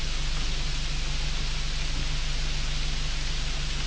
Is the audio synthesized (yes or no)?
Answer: no